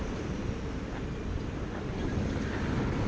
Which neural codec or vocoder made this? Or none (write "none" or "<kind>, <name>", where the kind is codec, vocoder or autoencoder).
none